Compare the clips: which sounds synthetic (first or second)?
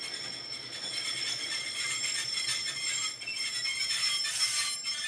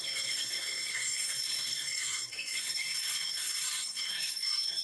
second